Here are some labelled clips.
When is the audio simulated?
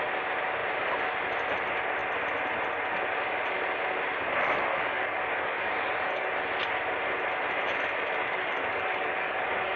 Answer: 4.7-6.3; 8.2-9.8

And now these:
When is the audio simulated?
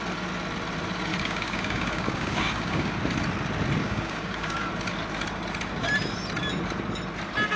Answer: 1.1-3.0; 3.8-4.7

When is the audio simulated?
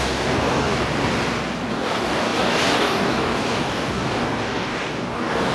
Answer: 0.0-0.9; 1.7-5.5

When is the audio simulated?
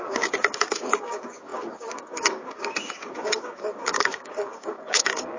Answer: 0.0-5.4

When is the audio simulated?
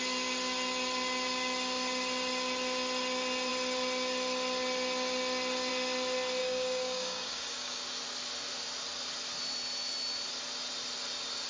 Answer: 6.4-7.8